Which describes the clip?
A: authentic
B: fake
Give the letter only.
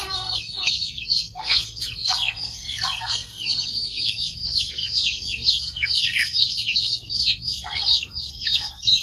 B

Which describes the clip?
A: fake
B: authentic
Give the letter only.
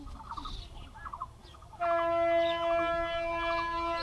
B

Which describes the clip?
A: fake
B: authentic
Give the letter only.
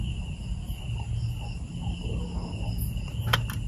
B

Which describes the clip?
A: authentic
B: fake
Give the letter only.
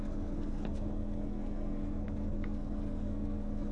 B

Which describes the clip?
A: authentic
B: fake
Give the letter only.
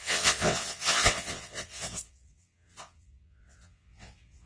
B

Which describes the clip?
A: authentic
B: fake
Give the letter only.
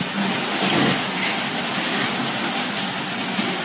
A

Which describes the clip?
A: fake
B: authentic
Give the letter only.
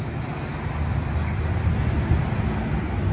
B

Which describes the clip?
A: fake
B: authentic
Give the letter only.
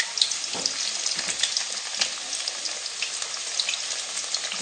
B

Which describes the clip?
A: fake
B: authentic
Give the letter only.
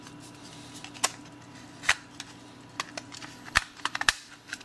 B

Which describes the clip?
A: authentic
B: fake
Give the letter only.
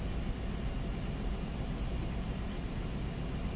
A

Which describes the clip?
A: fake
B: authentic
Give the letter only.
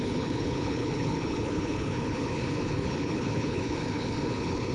A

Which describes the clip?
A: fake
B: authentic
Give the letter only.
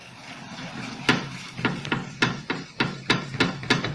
B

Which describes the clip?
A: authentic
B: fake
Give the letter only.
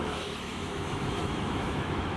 B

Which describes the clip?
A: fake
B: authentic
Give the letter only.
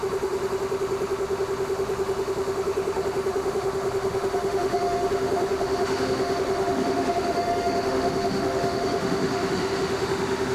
A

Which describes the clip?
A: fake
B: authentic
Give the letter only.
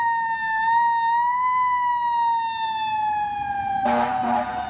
B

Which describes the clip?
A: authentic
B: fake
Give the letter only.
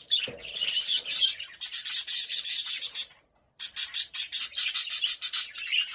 B